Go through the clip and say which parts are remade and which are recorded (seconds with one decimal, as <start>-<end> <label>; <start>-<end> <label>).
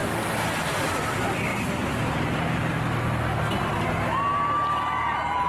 0.0-0.6 recorded; 0.6-1.5 remade; 1.5-4.2 recorded; 4.2-5.5 remade